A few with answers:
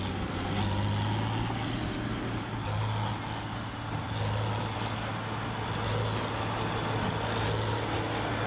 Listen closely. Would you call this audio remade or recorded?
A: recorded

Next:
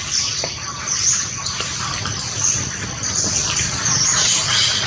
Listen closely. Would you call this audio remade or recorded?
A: remade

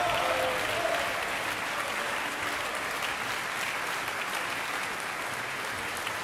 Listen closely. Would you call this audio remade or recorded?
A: recorded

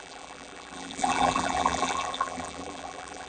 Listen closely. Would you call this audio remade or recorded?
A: remade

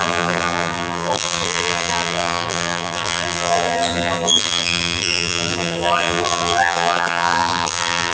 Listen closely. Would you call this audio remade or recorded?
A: remade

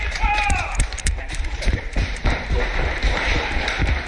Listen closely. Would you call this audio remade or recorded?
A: remade